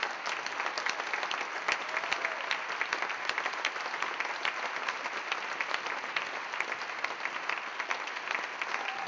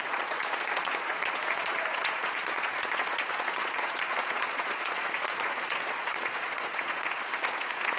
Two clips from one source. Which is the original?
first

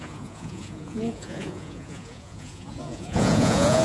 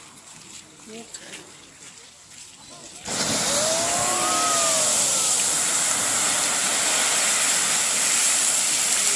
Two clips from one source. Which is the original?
second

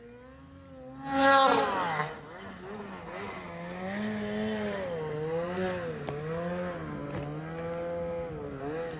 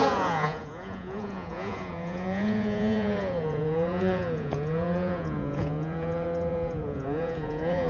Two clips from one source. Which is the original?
first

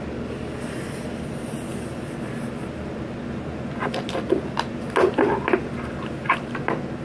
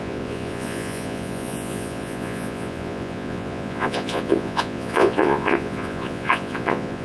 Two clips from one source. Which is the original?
first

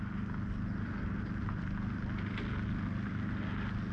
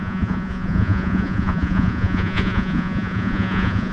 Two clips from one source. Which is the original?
first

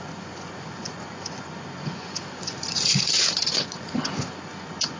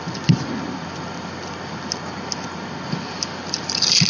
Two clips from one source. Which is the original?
second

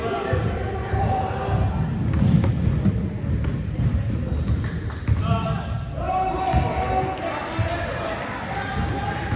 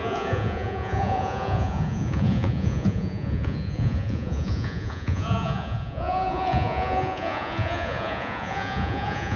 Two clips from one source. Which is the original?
first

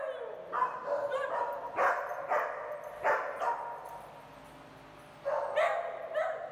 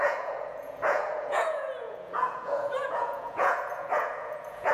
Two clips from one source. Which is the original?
first